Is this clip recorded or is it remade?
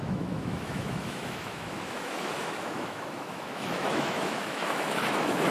remade